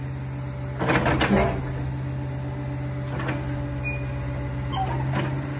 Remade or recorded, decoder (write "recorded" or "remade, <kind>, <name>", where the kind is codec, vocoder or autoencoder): recorded